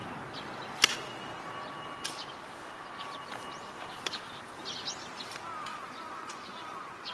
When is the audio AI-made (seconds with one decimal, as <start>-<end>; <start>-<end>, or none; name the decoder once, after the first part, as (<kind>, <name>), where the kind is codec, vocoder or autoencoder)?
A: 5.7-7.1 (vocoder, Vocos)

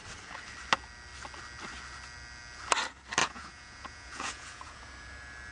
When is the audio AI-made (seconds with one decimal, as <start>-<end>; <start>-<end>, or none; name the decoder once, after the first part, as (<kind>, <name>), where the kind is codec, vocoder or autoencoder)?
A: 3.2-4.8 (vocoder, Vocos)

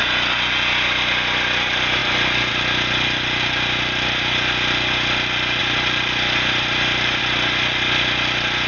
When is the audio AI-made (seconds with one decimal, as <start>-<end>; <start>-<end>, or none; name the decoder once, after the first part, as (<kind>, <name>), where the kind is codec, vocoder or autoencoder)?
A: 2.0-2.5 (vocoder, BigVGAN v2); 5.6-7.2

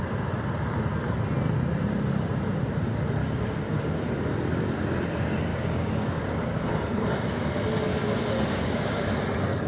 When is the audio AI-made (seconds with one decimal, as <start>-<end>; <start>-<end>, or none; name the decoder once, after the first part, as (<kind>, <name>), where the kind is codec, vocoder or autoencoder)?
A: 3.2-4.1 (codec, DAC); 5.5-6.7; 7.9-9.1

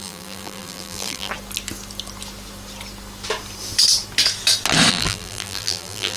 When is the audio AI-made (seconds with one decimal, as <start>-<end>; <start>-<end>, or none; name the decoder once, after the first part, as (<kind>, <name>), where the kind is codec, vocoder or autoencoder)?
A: 0.0-1.3 (vocoder, BigVGAN v2); 4.9-6.2

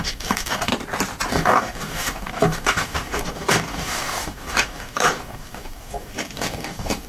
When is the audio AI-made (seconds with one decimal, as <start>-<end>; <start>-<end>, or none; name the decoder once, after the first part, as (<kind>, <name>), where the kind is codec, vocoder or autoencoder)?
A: 0.0-0.7 (codec, DAC); 1.3-7.1

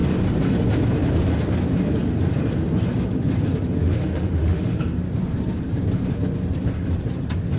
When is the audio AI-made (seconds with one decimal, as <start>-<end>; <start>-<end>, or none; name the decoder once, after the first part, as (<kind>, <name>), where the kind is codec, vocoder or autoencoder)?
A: 3.8-4.8 (autoencoder, DAC-VAE)

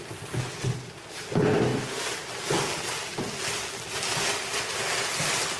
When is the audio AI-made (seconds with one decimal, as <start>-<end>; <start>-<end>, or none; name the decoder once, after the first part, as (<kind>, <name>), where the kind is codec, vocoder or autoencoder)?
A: none